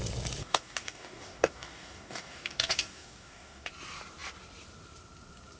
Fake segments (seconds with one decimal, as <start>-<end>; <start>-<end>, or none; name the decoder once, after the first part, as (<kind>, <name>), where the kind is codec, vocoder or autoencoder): 0.4-3.7 (codec, DAC)